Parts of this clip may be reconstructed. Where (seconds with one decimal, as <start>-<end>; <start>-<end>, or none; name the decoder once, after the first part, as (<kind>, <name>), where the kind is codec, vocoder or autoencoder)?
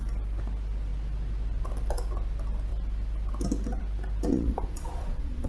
4.3-5.5 (vocoder, Vocos)